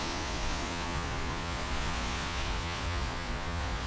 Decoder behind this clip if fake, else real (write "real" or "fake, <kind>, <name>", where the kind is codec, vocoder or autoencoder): fake, vocoder, Vocos